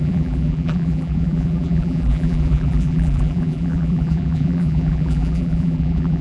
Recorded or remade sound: remade